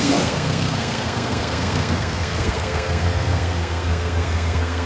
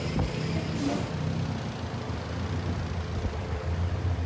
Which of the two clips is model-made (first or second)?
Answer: first